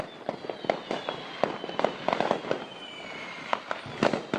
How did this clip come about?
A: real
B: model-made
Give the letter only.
A